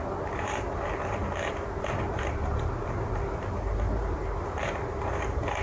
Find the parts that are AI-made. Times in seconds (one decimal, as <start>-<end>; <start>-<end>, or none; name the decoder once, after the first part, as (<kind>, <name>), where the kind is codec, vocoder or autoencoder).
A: 0.0-5.6 (vocoder, BigVGAN v2)